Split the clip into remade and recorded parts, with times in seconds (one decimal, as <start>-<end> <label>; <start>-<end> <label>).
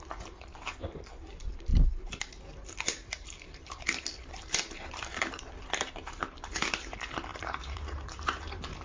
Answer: 0.0-7.3 recorded; 7.3-8.8 remade